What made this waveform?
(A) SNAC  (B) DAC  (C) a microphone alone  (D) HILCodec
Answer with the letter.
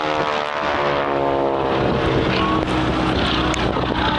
C